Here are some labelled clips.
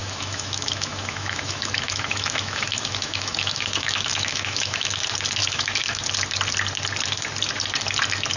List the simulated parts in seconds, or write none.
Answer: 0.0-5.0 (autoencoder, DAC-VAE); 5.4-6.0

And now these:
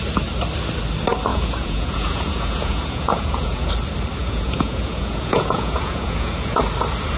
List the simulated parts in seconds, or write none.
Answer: 1.3-3.7 (vocoder, Vocos); 4.2-6.6

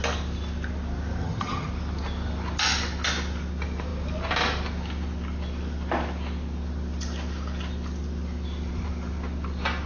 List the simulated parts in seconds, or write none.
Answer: 1.2-1.7 (vocoder, HiFi-GAN)

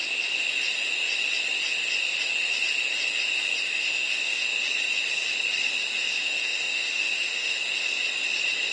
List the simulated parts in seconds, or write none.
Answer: 3.7-4.4 (autoencoder, DAC-VAE); 6.2-7.6

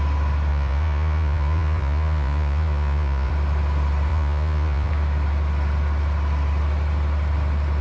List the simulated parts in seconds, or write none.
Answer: 0.5-3.3 (vocoder, Vocos); 4.1-4.9

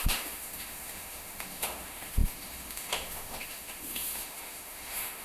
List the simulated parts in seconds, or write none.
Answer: 0.0-5.2 (autoencoder, DAC-VAE)